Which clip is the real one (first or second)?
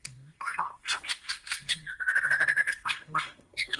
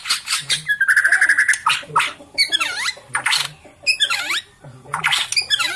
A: second